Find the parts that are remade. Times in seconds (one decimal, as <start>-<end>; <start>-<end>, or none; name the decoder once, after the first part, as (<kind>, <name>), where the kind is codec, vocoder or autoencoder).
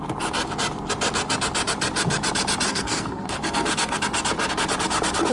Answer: 2.7-4.0 (codec, SNAC)